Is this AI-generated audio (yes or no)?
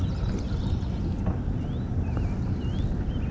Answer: no